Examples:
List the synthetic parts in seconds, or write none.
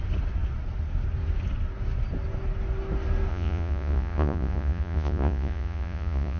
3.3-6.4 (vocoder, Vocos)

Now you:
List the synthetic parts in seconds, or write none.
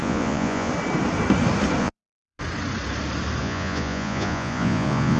0.0-0.7 (vocoder, Vocos); 1.8-2.4; 3.4-5.2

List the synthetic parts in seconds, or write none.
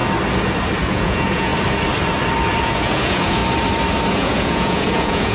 0.9-1.5 (vocoder, Vocos); 2.6-3.4; 4.1-5.3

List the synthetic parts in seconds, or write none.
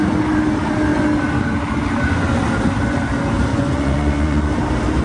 3.5-4.5 (vocoder, Vocos)